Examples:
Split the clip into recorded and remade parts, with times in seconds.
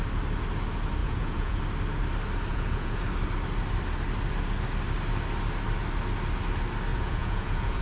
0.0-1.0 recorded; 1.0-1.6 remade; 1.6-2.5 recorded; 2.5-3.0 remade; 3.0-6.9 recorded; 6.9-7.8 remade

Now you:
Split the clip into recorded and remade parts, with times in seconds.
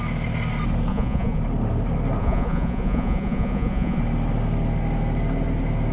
0.0-0.9 recorded; 0.9-1.4 remade; 1.4-2.2 recorded; 2.2-4.0 remade; 4.0-5.9 recorded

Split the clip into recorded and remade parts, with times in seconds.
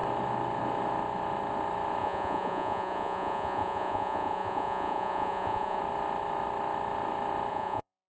0.0-2.0 recorded; 2.0-5.8 remade; 5.8-7.5 recorded; 7.5-8.1 remade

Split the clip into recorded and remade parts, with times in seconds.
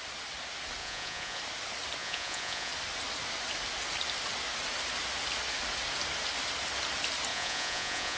0.0-0.8 recorded; 0.8-1.4 remade; 1.4-2.0 recorded; 2.0-2.7 remade; 2.7-7.3 recorded; 7.3-8.2 remade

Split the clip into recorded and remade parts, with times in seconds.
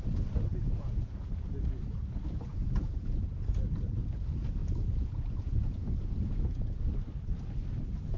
0.0-0.5 recorded; 0.5-1.3 remade; 1.3-2.5 recorded; 2.5-3.3 remade; 3.3-4.6 recorded; 4.6-6.9 remade; 6.9-8.2 recorded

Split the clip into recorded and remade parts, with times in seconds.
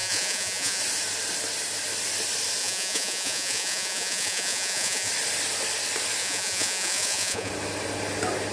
0.0-0.8 remade; 0.8-2.6 recorded; 2.6-5.1 remade; 5.1-6.2 recorded; 6.2-7.5 remade; 7.5-8.5 recorded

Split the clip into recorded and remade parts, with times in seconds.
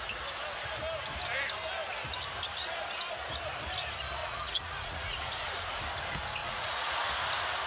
0.0-4.2 recorded; 4.2-5.3 remade; 5.3-6.4 recorded; 6.4-7.1 remade; 7.1-7.7 recorded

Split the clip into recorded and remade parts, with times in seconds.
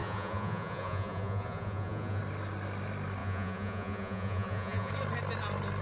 0.0-2.2 remade; 2.2-3.2 recorded; 3.2-4.9 remade; 4.9-5.8 recorded